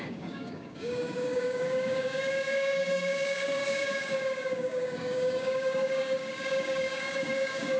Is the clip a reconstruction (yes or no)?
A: yes